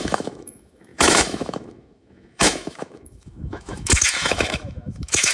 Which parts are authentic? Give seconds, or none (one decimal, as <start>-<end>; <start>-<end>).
none